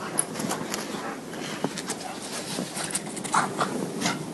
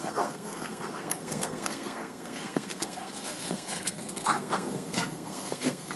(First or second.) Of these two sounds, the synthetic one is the second